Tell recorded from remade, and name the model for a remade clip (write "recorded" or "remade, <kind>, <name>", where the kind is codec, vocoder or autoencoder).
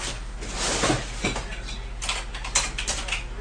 recorded